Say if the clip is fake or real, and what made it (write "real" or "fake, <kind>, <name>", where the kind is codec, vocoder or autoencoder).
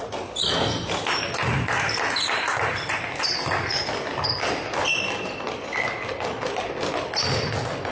real